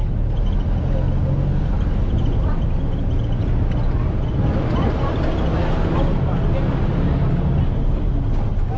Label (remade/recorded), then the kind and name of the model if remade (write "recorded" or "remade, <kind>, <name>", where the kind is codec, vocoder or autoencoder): recorded